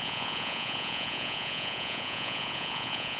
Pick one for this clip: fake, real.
fake